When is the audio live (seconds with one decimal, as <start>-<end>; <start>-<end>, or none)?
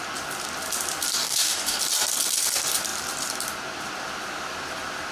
0.0-1.2; 1.8-5.1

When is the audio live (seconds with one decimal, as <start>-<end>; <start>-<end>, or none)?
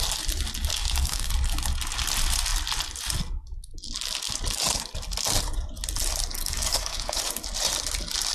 0.0-0.7; 1.3-6.4; 7.2-8.3